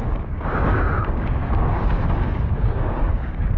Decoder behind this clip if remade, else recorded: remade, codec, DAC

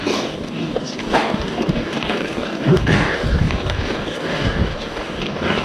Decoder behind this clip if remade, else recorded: remade, codec, DAC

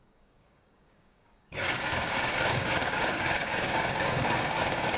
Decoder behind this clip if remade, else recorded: remade, codec, DAC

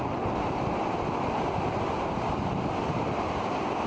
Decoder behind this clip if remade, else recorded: recorded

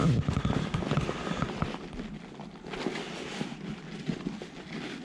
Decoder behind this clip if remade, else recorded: recorded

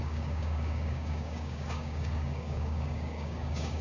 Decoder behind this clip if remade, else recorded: remade, codec, DAC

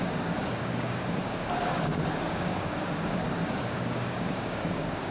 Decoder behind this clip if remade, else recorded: remade, codec, DAC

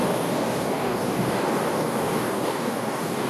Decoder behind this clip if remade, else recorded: remade, codec, DAC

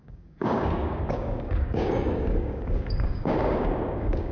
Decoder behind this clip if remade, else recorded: remade, codec, DAC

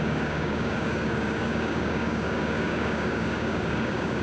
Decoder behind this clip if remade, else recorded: remade, codec, DAC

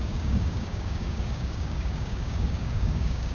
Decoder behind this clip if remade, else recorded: remade, codec, DAC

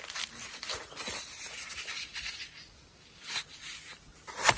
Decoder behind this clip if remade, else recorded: recorded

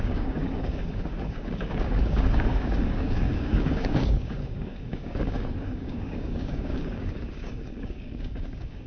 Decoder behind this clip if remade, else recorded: remade, codec, DAC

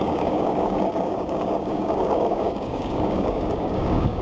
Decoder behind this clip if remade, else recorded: remade, codec, DAC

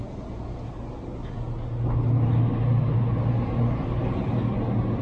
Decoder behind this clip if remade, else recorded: recorded